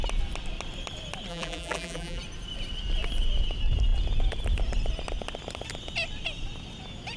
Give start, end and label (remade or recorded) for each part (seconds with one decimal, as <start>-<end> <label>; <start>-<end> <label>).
0.0-1.3 recorded; 1.3-2.2 remade; 2.2-7.2 recorded